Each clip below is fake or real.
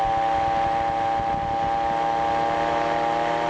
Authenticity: real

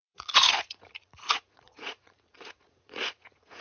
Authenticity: fake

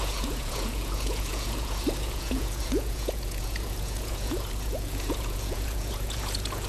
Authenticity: fake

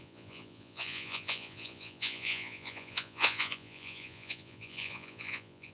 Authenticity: fake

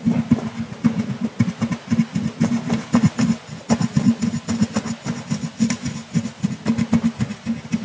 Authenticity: real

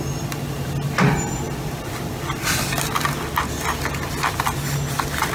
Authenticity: real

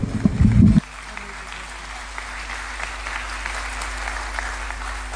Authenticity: real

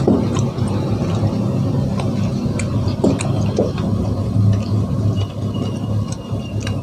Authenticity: real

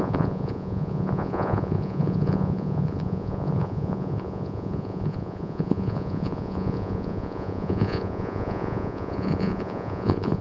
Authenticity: fake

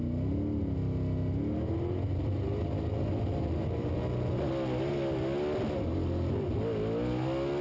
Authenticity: real